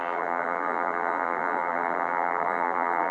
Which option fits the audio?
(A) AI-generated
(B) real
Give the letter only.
A